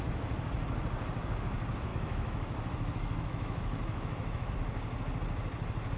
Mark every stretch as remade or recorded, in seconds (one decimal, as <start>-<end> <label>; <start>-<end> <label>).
0.0-1.9 recorded; 1.9-4.5 remade; 4.5-6.0 recorded